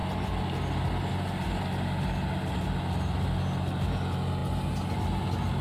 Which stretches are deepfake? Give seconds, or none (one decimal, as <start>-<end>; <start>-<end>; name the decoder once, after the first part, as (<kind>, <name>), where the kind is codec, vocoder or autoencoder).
none